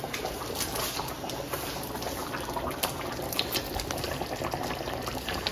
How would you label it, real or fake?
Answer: real